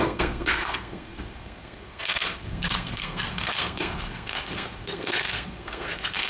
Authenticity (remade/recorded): remade